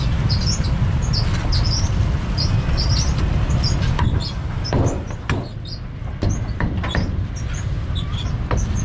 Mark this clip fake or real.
real